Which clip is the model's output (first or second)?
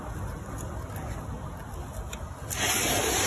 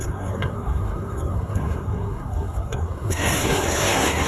second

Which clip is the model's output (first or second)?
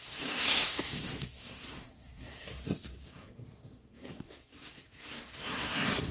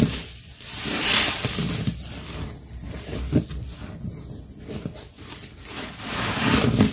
first